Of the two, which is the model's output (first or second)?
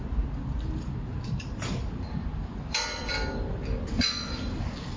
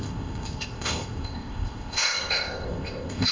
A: second